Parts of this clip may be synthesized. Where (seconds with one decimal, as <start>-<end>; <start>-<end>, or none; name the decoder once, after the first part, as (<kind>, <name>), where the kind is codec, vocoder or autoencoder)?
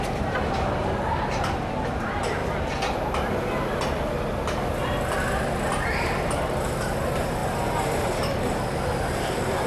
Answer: 0.0-2.4 (vocoder, BigVGAN v2); 5.5-9.7